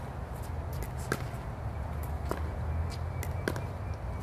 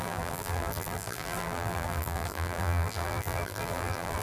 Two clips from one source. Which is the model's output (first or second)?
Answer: second